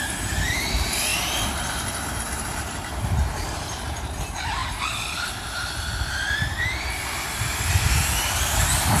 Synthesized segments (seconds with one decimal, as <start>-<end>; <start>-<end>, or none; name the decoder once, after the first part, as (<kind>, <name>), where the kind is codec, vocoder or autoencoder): 0.0-9.0 (vocoder, BigVGAN v2)